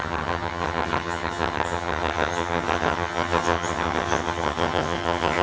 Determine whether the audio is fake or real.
fake